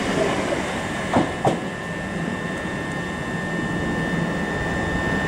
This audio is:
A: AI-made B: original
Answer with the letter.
B